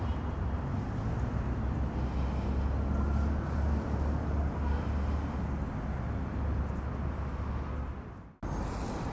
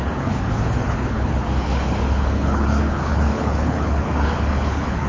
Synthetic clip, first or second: second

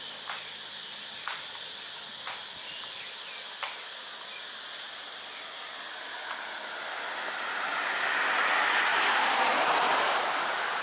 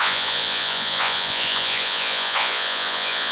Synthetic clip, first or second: second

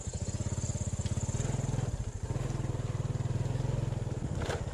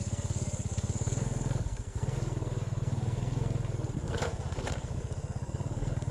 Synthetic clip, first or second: second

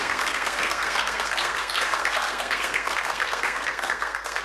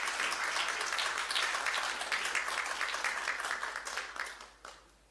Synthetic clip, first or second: first